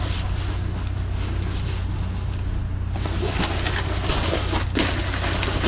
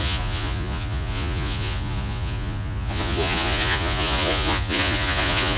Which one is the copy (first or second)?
second